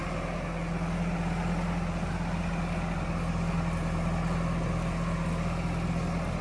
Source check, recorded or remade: recorded